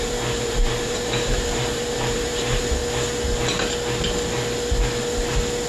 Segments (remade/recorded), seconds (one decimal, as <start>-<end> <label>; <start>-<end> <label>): 0.0-2.8 remade; 2.8-5.7 recorded

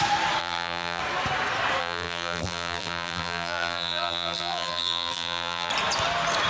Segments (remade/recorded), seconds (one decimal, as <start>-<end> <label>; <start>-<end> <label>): 0.0-0.4 recorded; 0.4-1.0 remade; 1.0-1.8 recorded; 1.8-5.7 remade; 5.7-6.5 recorded

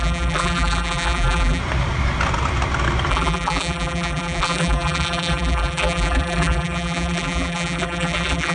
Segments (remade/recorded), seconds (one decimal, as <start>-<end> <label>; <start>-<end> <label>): 0.0-1.6 remade; 1.6-3.1 recorded; 3.1-8.5 remade

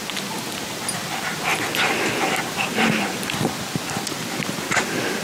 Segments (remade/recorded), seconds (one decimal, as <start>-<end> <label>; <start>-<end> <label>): 0.0-5.2 recorded

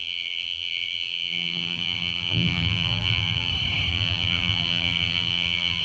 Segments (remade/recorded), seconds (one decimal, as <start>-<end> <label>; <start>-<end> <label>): 0.0-3.5 remade; 3.5-3.9 recorded; 3.9-5.8 remade

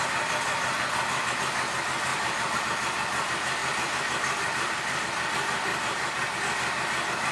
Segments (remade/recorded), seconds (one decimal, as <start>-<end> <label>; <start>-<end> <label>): 0.0-2.1 recorded; 2.1-2.6 remade; 2.6-5.7 recorded; 5.7-6.4 remade; 6.4-7.3 recorded

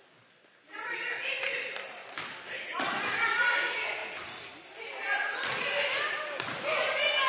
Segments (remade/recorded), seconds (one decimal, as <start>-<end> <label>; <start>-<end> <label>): 0.0-1.5 recorded; 1.5-2.2 remade; 2.2-7.3 recorded